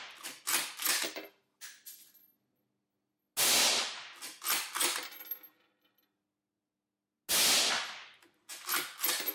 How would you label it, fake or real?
real